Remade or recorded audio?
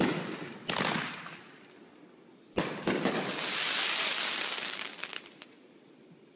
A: recorded